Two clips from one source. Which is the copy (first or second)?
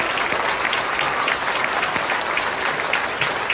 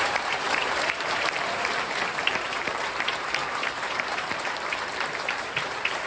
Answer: second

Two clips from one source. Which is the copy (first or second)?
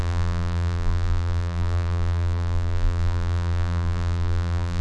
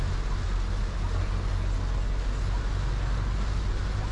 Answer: first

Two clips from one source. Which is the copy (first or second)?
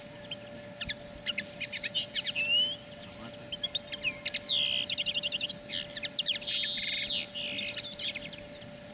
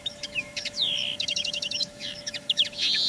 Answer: second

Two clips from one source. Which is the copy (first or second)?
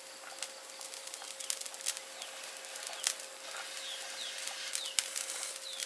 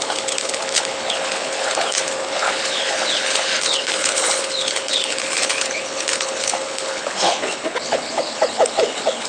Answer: second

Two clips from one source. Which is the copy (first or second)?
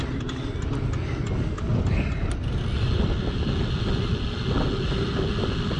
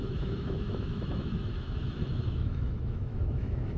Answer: second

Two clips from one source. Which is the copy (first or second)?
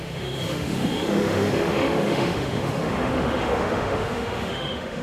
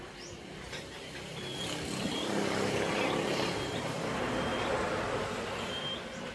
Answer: first